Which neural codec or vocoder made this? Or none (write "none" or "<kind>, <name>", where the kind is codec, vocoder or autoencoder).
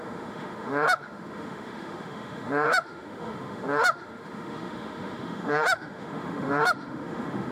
autoencoder, DAC-VAE